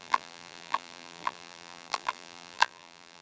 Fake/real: fake